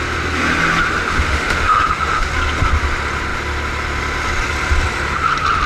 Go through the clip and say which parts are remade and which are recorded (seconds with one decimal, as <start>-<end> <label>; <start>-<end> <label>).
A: 0.0-1.0 recorded; 1.0-2.3 remade; 2.3-5.7 recorded